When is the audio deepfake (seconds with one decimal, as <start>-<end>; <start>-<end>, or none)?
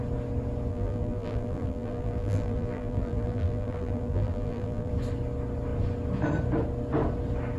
0.7-4.9